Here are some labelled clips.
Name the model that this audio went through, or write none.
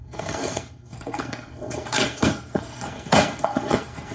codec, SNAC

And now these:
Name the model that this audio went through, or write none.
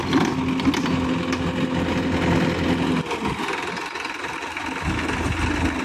none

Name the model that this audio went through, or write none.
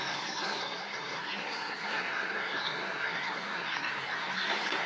codec, SNAC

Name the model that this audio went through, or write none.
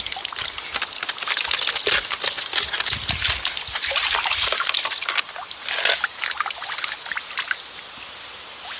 none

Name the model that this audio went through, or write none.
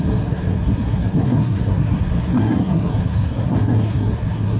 codec, SNAC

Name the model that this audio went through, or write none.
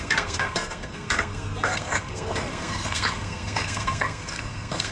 codec, SNAC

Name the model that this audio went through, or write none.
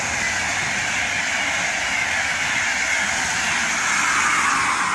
none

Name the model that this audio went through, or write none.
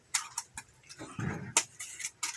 none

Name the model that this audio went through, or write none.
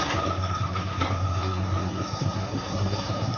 codec, SNAC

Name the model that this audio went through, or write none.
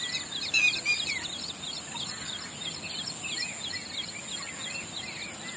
none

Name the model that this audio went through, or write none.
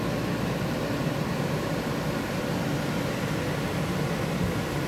none